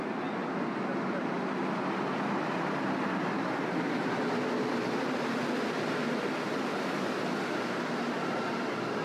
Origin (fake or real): real